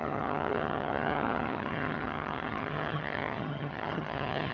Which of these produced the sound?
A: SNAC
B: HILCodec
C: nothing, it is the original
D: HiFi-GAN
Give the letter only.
D